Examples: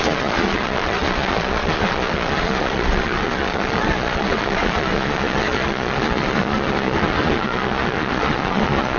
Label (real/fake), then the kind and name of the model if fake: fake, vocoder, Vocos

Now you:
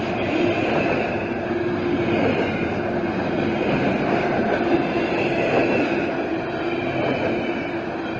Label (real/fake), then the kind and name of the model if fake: real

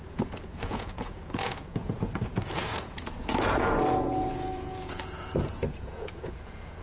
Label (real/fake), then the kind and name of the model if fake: fake, vocoder, Vocos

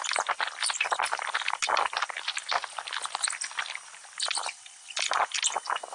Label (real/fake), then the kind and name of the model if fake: real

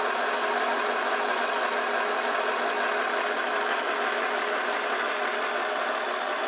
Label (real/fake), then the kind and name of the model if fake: real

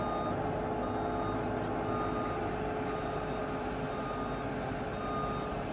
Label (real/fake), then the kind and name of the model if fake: real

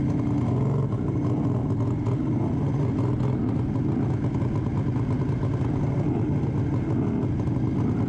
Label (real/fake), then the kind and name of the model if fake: real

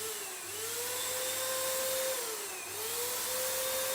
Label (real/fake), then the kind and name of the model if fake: real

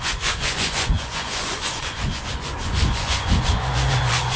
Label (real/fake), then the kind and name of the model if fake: fake, vocoder, Vocos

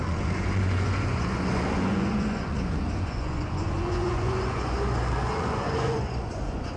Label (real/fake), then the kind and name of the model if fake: fake, vocoder, Vocos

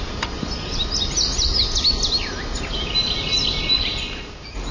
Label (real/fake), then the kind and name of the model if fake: real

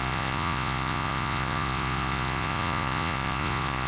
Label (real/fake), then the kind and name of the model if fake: fake, vocoder, Vocos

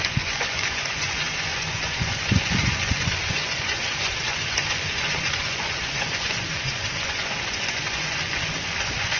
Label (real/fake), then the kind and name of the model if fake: fake, vocoder, Vocos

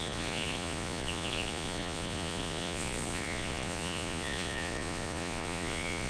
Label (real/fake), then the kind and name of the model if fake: fake, vocoder, Vocos